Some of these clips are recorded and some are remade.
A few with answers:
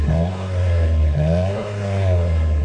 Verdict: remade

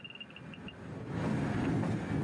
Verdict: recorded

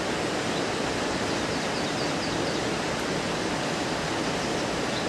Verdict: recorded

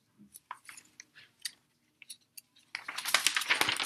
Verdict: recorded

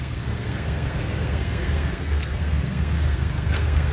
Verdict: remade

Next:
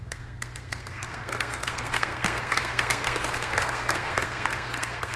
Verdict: remade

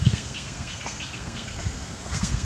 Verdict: remade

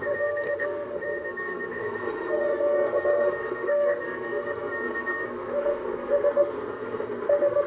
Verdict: remade